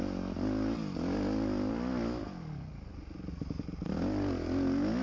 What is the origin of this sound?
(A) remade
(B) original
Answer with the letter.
B